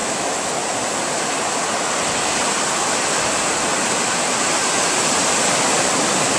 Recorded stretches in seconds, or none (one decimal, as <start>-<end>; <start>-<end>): 0.6-6.4